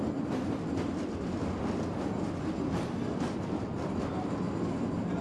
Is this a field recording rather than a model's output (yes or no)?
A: yes